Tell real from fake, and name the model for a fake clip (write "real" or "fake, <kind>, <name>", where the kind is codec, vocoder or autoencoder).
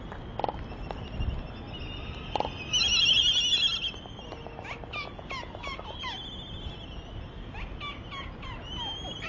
real